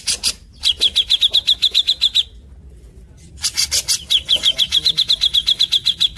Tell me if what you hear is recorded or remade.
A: recorded